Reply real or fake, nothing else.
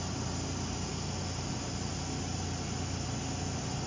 real